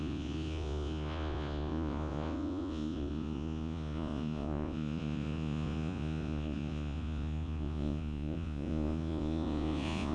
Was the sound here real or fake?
fake